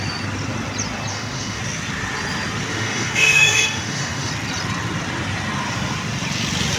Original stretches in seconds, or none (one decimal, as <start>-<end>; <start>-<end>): 0.0-1.1; 1.6-2.7; 4.3-6.8